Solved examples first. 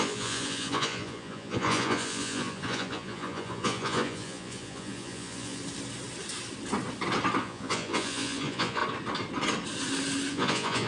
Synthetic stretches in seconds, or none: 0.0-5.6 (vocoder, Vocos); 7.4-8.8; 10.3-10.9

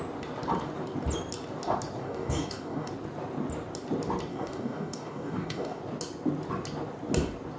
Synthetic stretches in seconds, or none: 2.0-2.9 (codec, DAC); 4.3-5.8